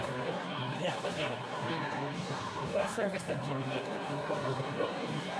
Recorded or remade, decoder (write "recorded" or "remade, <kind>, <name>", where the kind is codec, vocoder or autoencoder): remade, codec, SNAC